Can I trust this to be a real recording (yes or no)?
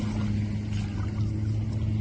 yes